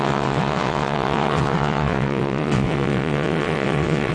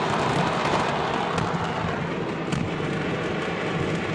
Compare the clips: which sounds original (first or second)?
second